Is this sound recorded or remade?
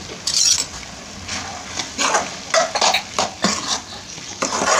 recorded